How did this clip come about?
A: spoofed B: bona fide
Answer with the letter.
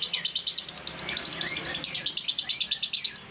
B